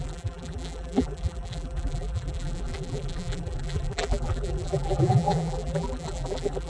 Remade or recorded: remade